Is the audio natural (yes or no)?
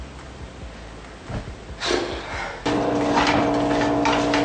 yes